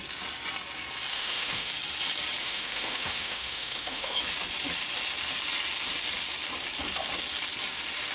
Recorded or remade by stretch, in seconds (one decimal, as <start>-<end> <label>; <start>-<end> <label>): 0.0-1.1 recorded; 1.1-1.7 remade; 1.7-2.4 recorded; 2.4-4.2 remade; 4.2-8.1 recorded